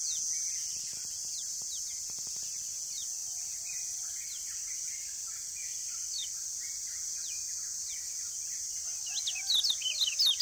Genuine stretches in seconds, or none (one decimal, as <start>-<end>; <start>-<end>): 0.0-10.4